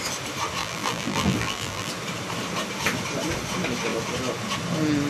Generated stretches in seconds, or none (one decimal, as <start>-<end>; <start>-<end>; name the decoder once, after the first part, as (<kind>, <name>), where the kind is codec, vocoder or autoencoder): 0.6-1.9 (vocoder, BigVGAN v2)

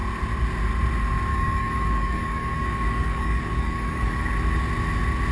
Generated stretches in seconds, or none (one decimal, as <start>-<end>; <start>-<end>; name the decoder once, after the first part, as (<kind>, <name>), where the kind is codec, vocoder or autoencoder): 1.3-4.3 (codec, DAC)

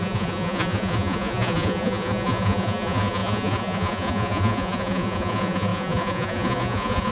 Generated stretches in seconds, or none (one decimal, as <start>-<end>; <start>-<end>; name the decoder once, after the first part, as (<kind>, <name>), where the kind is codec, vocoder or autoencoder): 0.0-7.1 (vocoder, Vocos)

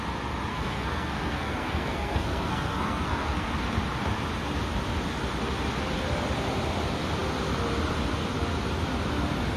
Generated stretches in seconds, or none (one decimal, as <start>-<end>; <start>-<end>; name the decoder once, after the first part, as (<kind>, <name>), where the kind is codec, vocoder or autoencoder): 0.5-3.5 (codec, SNAC)

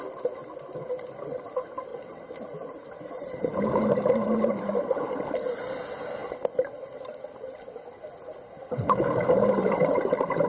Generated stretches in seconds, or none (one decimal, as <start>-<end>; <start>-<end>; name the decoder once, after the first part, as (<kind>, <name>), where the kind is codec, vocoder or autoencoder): 1.9-4.5 (vocoder, BigVGAN v2)

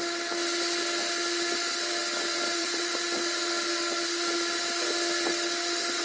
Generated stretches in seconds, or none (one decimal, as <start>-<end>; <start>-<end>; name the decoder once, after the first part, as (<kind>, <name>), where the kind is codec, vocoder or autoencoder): 2.0-2.8 (vocoder, BigVGAN v2)

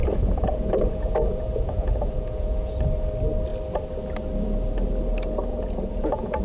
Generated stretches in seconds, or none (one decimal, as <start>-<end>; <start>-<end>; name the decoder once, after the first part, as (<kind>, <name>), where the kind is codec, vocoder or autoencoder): 0.0-2.7 (vocoder, Vocos); 5.5-6.4

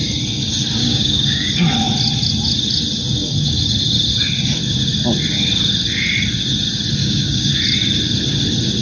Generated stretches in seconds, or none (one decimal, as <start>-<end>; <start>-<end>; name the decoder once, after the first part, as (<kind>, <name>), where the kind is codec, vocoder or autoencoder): 0.8-1.5 (codec, DAC); 7.0-7.5